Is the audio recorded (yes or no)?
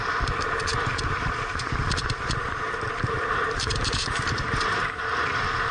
no